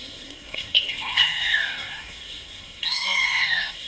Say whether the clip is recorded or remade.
remade